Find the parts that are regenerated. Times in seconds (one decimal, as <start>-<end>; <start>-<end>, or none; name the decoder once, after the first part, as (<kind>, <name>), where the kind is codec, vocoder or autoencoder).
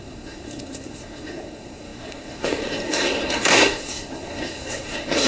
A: 0.0-5.3 (codec, SNAC)